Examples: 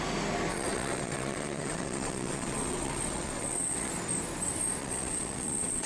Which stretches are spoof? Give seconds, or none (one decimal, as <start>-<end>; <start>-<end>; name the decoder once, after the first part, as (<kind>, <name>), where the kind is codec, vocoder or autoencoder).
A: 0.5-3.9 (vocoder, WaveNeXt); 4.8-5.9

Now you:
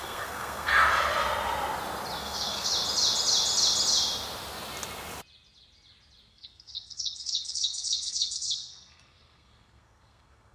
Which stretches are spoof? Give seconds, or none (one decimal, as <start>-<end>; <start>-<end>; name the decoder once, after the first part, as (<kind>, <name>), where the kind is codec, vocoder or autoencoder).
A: 0.0-0.7 (codec, SNAC); 2.2-2.7; 6.3-10.5

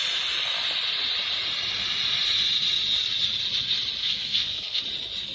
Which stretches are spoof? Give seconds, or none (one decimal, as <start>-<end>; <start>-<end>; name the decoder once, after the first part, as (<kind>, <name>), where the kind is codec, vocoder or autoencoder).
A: 4.0-4.8 (codec, SNAC)

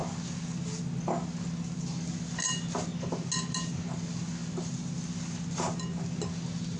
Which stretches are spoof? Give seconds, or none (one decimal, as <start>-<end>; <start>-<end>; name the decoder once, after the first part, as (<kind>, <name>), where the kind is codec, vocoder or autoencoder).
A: none

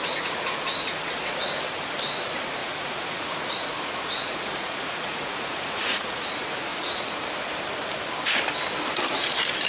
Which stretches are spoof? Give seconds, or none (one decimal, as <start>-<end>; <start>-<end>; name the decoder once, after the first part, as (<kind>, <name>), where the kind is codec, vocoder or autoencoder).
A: 0.0-1.1 (vocoder, Vocos); 2.6-6.2; 6.7-7.2

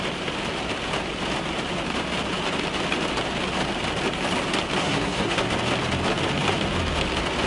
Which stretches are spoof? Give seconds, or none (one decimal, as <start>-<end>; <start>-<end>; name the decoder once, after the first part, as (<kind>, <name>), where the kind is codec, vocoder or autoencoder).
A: 4.8-5.4 (codec, SNAC)

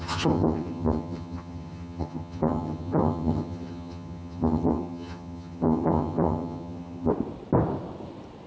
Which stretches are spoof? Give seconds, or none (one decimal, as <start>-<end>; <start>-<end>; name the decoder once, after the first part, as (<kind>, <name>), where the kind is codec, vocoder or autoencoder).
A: 0.0-7.1 (vocoder, HiFi-GAN)

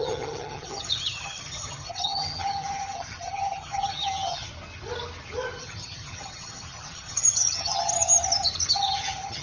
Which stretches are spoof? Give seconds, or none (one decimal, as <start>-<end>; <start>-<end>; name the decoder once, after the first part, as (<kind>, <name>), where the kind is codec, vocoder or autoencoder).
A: 0.0-4.5 (vocoder, HiFi-GAN); 5.6-7.9; 8.7-9.4